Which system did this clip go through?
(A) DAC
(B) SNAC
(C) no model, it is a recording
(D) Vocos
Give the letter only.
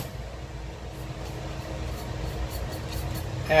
C